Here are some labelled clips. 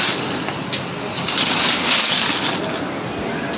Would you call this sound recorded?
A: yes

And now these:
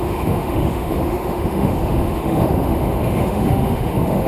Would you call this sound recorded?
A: no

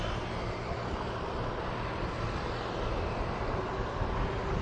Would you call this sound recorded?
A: yes